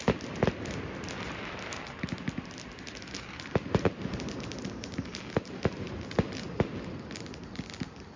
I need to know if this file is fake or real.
real